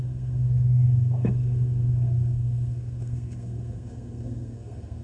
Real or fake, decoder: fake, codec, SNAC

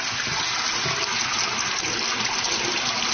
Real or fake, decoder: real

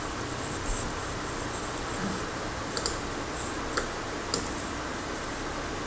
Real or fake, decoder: real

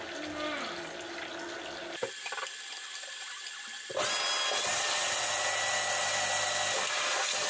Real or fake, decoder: real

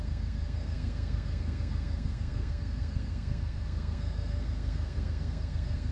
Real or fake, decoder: fake, codec, SNAC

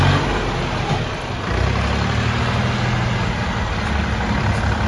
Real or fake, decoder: real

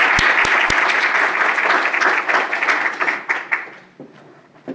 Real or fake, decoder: real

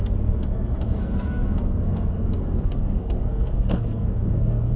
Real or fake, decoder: fake, codec, SNAC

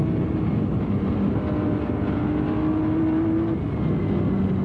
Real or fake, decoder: real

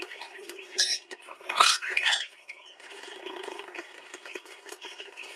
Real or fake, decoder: fake, codec, SNAC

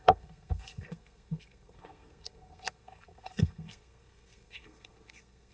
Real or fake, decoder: fake, codec, SNAC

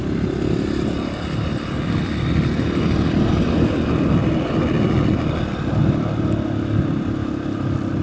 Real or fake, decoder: real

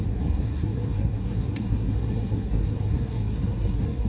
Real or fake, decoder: fake, codec, SNAC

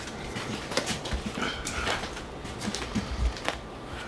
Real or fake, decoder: real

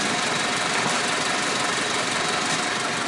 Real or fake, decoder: real